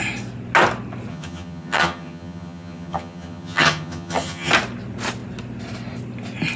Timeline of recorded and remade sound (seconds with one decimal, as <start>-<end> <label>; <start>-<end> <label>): 0.0-1.1 recorded; 1.1-4.5 remade; 4.5-6.6 recorded